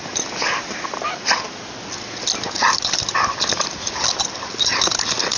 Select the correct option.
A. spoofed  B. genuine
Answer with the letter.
B